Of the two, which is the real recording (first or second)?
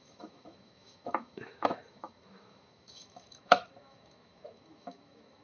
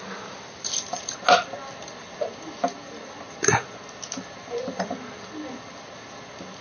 second